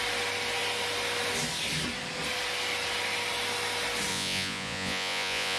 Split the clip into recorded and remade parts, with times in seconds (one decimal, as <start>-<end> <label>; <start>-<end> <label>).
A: 0.0-4.1 recorded; 4.1-5.6 remade